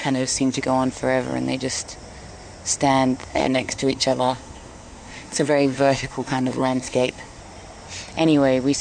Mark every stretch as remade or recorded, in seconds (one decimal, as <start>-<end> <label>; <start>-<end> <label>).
0.0-0.6 remade; 0.6-3.3 recorded; 3.3-7.4 remade; 7.4-8.8 recorded